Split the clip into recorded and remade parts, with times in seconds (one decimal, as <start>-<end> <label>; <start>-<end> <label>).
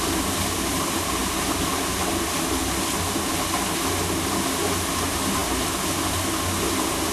0.0-7.1 recorded